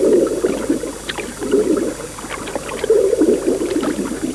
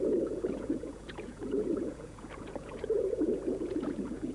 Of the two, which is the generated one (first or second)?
second